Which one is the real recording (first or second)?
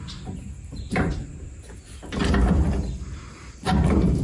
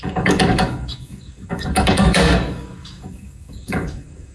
first